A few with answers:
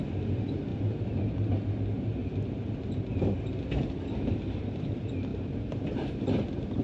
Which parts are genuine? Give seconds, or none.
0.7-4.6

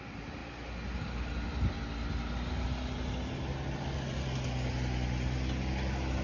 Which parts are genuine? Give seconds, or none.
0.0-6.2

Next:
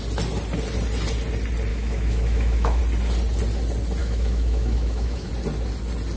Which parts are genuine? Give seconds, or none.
0.0-1.7; 2.8-4.0; 5.3-6.2

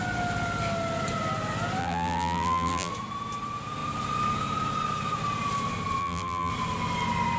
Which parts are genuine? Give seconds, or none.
0.0-1.8; 2.9-6.0; 6.5-7.4

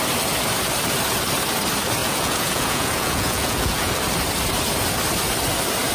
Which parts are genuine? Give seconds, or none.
0.0-2.0; 3.9-5.9

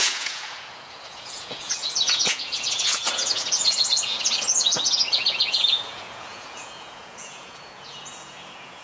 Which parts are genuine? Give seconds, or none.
none

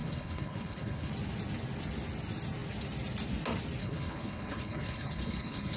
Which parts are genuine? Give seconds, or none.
1.1-3.8